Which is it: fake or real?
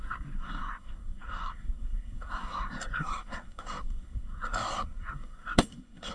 fake